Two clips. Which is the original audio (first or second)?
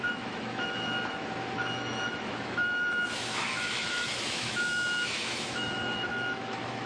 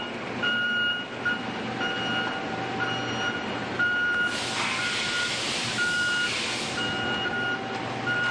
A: second